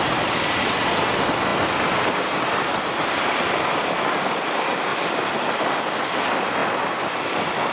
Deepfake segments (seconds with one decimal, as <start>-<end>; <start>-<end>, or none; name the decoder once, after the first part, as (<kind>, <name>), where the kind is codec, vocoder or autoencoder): none